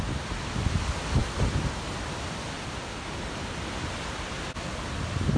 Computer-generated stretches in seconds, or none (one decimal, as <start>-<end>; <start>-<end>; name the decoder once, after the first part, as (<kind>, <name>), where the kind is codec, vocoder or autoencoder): 1.2-4.4 (vocoder, BigVGAN v2)